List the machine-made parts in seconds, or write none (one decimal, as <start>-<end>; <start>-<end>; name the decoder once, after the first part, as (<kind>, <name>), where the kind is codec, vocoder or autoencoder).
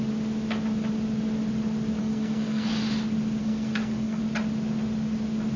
2.0-2.7 (codec, SNAC); 3.4-4.2